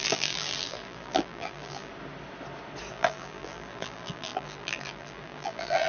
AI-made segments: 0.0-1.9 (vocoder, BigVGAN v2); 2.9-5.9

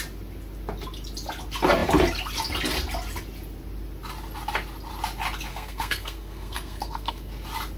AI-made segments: 5.5-7.3 (codec, SNAC)

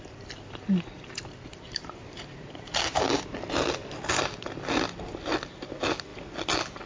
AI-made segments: 1.5-3.3 (vocoder, BigVGAN v2); 3.8-4.4

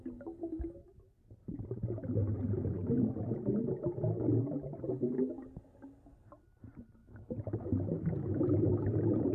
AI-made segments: 7.0-8.7 (autoencoder, DAC-VAE)

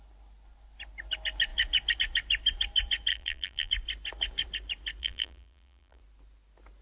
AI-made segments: 3.1-3.7 (vocoder, BigVGAN v2); 5.0-6.0